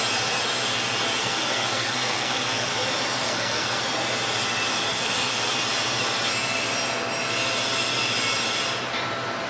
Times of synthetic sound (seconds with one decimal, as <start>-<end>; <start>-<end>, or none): 1.2-2.7; 3.2-3.8; 4.9-5.5